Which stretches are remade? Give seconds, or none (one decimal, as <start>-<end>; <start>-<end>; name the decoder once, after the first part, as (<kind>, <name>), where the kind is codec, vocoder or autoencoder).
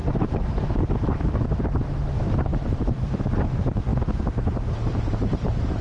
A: 0.0-0.7 (vocoder, BigVGAN v2); 2.5-3.2